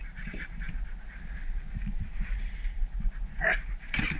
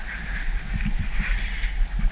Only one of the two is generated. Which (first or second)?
first